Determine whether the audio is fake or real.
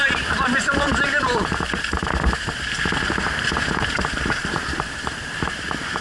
fake